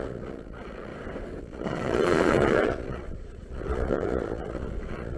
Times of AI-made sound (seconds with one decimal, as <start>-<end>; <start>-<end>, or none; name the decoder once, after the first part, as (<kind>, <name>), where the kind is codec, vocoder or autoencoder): 0.0-0.9 (vocoder, Vocos); 1.4-5.2